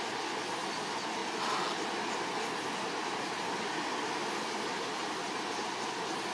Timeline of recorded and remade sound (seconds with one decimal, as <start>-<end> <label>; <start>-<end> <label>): 0.0-6.3 recorded